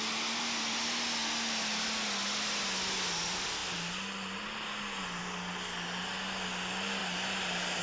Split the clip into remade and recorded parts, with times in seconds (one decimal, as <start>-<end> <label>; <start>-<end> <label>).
0.0-7.8 recorded

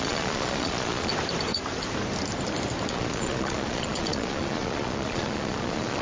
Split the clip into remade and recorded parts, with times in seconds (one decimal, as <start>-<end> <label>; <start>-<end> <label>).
0.0-1.1 remade; 1.1-2.9 recorded; 2.9-6.0 remade

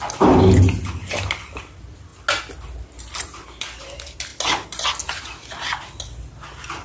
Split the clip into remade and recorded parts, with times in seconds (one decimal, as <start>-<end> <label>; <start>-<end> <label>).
0.0-6.8 recorded

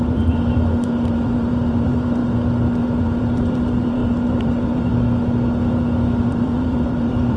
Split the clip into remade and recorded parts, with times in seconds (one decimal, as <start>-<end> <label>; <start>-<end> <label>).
0.0-2.2 remade; 2.2-2.8 recorded; 2.8-4.9 remade; 4.9-6.2 recorded; 6.2-7.4 remade

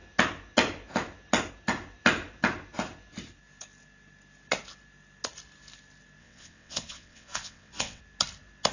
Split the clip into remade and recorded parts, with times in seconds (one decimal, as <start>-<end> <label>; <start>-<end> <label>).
0.0-6.2 recorded; 6.2-8.0 remade; 8.0-8.7 recorded